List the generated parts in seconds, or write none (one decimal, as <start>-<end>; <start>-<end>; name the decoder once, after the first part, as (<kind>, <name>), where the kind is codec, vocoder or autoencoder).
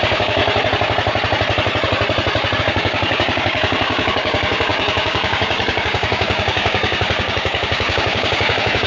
0.0-0.4 (codec, DAC); 2.6-8.9